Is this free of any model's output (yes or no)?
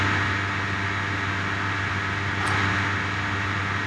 yes